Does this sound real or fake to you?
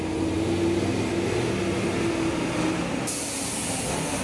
real